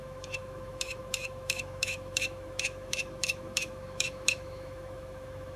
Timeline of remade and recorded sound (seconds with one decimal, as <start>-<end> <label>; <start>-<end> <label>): 0.0-5.6 remade